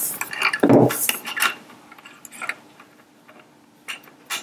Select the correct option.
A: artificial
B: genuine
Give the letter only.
B